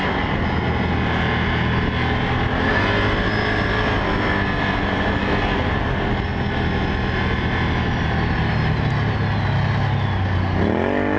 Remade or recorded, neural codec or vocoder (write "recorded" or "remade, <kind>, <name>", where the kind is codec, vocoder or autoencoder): recorded